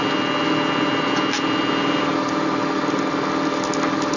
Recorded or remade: recorded